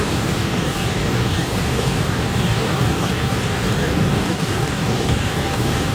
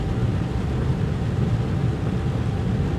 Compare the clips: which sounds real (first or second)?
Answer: second